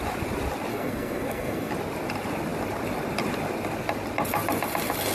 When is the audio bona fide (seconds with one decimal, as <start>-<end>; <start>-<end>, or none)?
0.0-0.7; 1.7-5.1